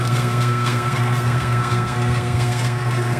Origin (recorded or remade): remade